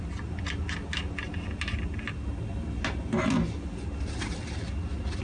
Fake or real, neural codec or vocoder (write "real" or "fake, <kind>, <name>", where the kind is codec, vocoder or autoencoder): real